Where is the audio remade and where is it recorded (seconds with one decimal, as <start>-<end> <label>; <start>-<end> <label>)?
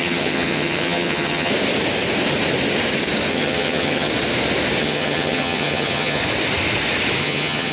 0.0-1.5 remade; 1.5-3.3 recorded; 3.3-4.1 remade; 4.1-4.8 recorded; 4.8-6.2 remade; 6.2-7.2 recorded; 7.2-7.7 remade